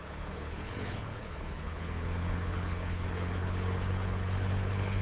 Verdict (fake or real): fake